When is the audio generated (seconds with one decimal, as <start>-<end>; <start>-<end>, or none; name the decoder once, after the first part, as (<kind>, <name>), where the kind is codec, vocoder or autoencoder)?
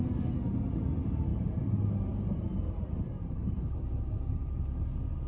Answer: 1.3-4.5 (vocoder, BigVGAN v2)